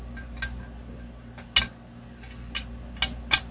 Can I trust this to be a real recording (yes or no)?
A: yes